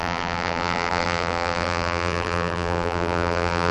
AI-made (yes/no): yes